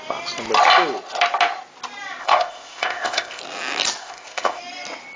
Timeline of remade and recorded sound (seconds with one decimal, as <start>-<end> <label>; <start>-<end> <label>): 0.0-2.2 recorded; 2.2-3.4 remade; 3.4-4.0 recorded; 4.0-4.6 remade; 4.6-5.2 recorded